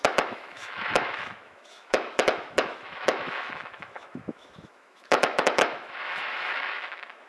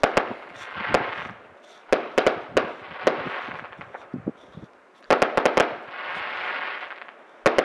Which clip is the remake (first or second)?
first